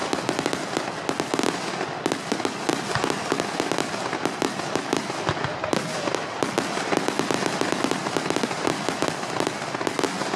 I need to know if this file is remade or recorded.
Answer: recorded